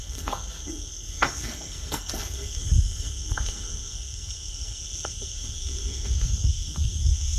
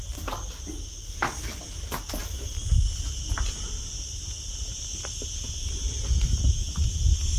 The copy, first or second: first